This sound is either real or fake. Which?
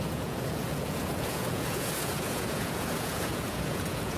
fake